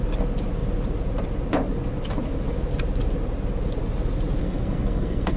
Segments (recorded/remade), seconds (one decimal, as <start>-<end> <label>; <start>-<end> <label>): 0.0-4.4 recorded; 4.4-5.4 remade